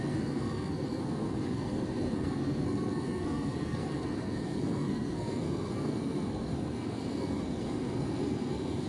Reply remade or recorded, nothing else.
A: remade